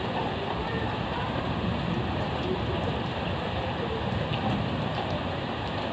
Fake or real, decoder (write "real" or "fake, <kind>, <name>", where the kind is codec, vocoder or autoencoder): fake, vocoder, BigVGAN v2